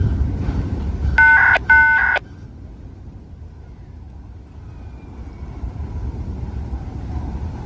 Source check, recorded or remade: recorded